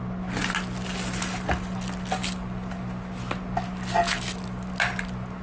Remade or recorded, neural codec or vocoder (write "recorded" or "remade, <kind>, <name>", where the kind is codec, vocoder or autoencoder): recorded